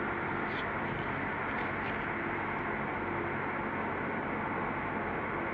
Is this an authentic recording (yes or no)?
yes